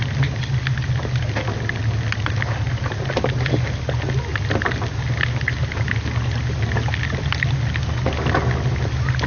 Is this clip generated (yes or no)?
no